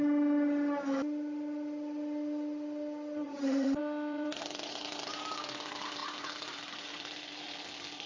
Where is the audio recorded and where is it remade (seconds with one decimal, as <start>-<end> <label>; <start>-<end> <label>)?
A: 0.0-3.2 recorded; 3.2-3.8 remade; 3.8-8.1 recorded